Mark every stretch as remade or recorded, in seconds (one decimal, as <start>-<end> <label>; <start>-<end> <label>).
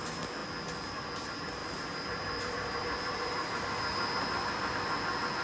0.0-1.6 recorded; 1.6-4.8 remade; 4.8-5.4 recorded